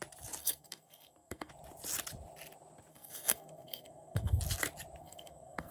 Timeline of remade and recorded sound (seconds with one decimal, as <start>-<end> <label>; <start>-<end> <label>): 0.0-0.4 recorded; 0.4-1.5 remade; 1.5-2.9 recorded; 2.9-4.4 remade; 4.4-5.0 recorded; 5.0-5.7 remade